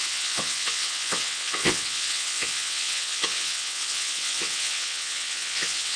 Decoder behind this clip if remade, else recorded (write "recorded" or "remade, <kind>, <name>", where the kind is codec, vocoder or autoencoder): remade, vocoder, WaveNeXt